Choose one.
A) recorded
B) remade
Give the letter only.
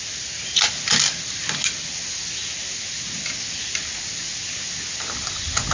A